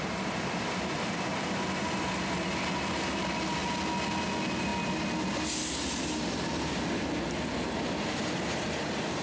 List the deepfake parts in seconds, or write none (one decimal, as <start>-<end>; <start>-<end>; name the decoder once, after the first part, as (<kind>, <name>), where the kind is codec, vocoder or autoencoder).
none